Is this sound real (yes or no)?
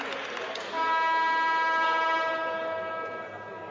yes